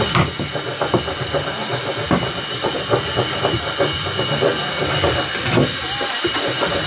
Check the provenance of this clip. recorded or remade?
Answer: recorded